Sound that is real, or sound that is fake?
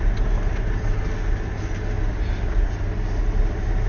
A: real